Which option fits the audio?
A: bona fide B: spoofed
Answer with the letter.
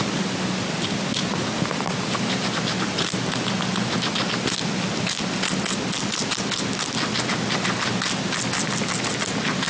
A